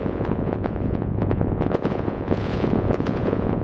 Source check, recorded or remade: remade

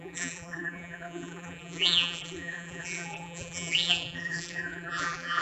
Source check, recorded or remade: remade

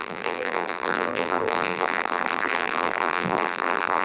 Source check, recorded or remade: remade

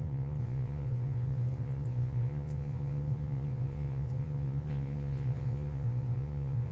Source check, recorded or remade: remade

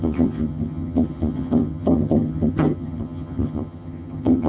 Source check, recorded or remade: remade